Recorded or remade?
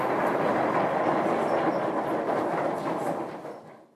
recorded